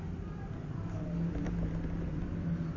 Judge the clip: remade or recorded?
recorded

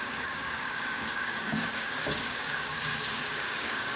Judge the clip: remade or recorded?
remade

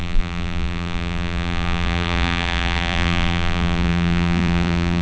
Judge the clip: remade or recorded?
remade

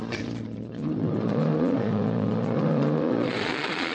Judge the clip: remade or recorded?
remade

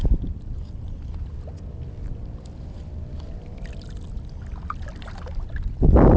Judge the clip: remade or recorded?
recorded